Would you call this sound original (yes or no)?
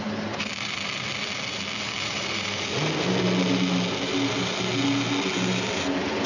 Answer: yes